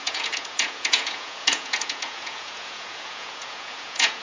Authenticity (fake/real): fake